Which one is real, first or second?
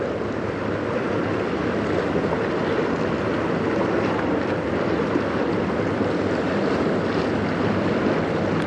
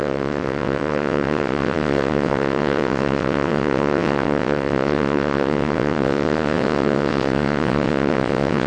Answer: first